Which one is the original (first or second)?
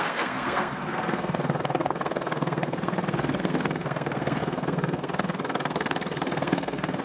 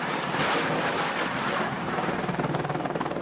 second